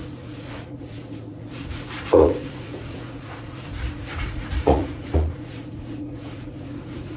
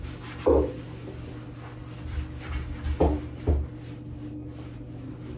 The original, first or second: second